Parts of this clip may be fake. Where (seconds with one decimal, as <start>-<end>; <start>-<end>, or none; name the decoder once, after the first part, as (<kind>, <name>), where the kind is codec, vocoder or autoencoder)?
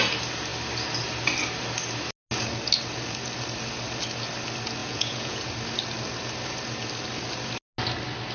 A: 4.8-5.5 (vocoder, Vocos)